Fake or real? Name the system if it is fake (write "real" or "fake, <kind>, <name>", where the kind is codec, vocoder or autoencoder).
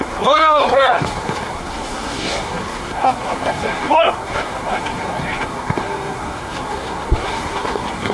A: fake, codec, SNAC